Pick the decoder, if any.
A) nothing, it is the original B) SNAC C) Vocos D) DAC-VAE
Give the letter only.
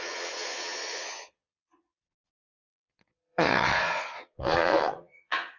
C